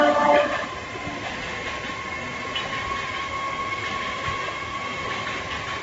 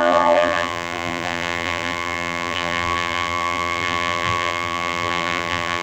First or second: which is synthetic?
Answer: second